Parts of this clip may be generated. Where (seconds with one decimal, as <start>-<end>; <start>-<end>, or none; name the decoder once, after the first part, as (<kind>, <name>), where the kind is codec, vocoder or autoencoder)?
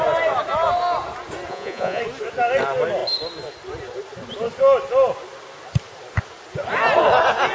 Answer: 1.5-2.0 (vocoder, Vocos)